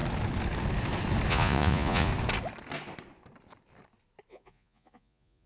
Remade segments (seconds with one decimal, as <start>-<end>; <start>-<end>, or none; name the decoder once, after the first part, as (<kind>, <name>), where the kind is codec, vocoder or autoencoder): 1.3-2.1 (vocoder, Vocos); 4.3-5.5